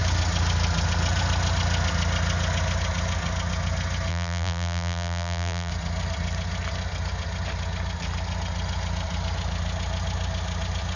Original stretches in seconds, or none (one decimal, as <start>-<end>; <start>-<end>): 0.0-4.1; 5.7-11.0